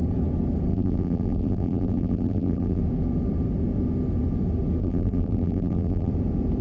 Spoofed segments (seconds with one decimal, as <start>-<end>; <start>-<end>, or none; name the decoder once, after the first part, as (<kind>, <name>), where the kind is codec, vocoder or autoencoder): 0.7-2.8 (vocoder, BigVGAN v2); 4.8-6.1